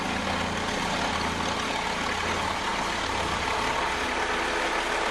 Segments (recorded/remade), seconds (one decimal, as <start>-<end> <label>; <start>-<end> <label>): 0.0-5.1 recorded